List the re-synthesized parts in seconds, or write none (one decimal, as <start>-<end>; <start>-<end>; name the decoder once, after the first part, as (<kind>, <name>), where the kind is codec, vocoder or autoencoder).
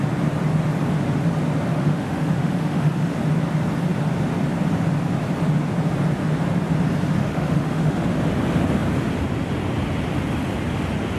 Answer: 1.7-3.1 (autoencoder, DAC-VAE); 7.2-8.1